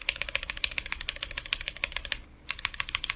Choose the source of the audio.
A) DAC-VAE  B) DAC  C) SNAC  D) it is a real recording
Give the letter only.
B